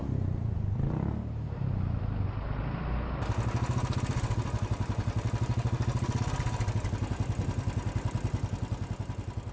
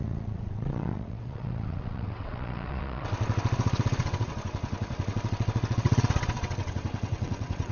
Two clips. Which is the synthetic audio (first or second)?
second